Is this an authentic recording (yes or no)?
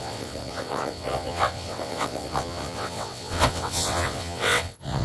no